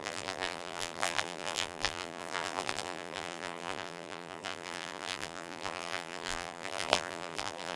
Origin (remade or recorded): remade